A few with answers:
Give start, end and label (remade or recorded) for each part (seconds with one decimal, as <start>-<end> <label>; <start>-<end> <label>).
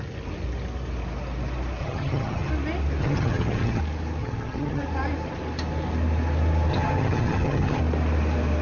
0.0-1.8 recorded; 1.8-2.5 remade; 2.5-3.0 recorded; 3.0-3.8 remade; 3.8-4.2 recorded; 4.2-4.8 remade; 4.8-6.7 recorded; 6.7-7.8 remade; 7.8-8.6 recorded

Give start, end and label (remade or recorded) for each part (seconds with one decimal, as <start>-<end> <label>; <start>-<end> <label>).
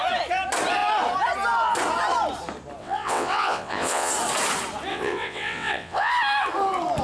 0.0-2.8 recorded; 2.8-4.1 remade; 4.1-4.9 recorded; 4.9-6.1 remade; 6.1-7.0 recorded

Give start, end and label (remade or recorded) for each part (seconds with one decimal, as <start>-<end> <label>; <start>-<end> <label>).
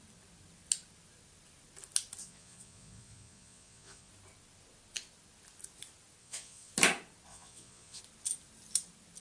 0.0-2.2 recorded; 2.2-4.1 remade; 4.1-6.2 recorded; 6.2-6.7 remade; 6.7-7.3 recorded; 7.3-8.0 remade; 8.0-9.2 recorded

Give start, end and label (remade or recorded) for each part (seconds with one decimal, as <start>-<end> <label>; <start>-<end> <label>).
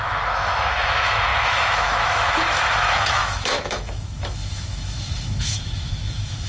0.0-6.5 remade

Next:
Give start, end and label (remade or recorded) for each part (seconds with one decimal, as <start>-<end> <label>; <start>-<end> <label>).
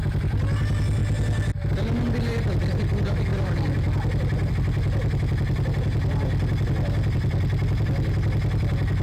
0.0-9.0 recorded